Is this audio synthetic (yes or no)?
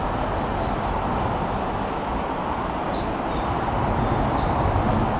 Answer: no